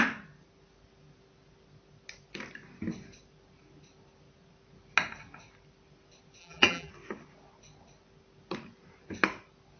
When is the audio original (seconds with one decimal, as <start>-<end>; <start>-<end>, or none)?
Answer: 0.0-6.4; 6.9-9.8